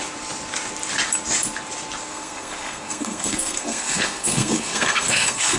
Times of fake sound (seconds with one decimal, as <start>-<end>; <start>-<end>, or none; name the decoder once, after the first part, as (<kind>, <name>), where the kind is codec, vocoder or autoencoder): 2.1-5.6 (codec, SNAC)